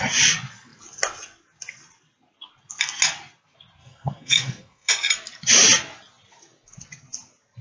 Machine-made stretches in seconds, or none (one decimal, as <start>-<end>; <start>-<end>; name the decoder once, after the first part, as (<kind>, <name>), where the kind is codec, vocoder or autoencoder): 3.8-4.9 (codec, SNAC)